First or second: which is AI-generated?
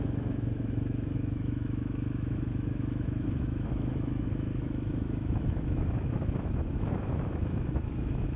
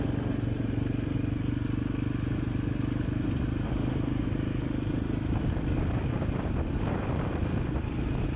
first